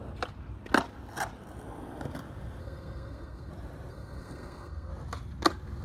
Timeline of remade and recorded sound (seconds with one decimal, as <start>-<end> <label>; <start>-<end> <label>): 0.0-2.6 recorded; 2.6-3.5 remade; 3.5-3.9 recorded; 3.9-4.9 remade; 4.9-5.8 recorded